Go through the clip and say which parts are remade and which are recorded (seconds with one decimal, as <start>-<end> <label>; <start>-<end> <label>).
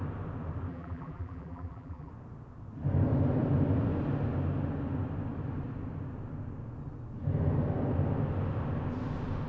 0.0-0.7 recorded; 0.7-2.1 remade; 2.1-9.5 recorded